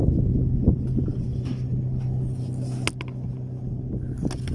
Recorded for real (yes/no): yes